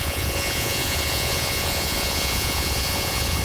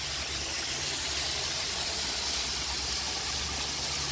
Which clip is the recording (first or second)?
second